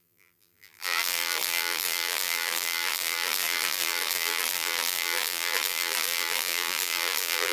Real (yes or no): no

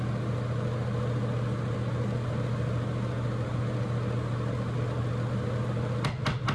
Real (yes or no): yes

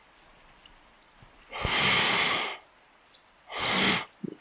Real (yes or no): yes